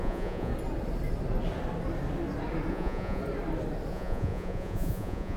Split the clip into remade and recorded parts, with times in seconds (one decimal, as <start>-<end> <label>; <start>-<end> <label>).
0.0-0.5 remade; 0.5-2.7 recorded; 2.7-3.2 remade; 3.2-3.9 recorded; 3.9-5.4 remade